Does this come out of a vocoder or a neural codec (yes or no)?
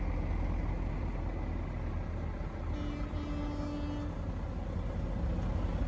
no